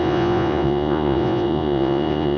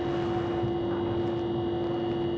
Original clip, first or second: second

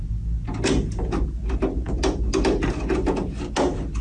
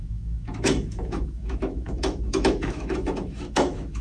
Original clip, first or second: first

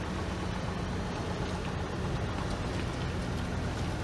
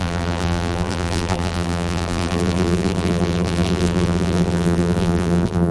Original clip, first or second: first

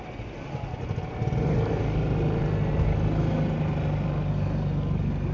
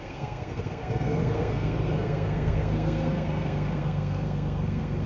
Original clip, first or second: first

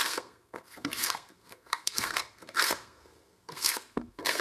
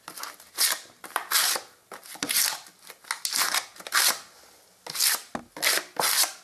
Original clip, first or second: second